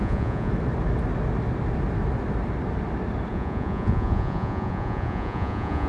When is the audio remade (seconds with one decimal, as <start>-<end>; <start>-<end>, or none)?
0.0-0.5; 3.3-5.9